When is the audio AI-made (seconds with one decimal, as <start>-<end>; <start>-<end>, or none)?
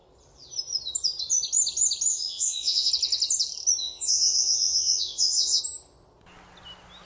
2.1-2.9; 3.8-5.6